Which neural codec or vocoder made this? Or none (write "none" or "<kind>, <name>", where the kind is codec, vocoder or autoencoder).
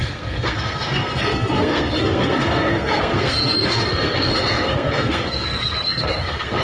codec, SNAC